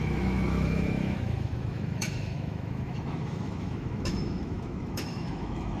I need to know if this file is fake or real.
fake